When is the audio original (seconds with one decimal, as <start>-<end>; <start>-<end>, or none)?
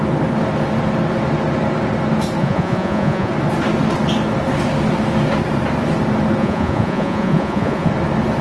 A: 0.0-2.4; 3.3-6.4; 7.9-8.4